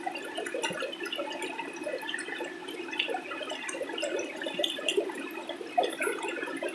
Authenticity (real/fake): real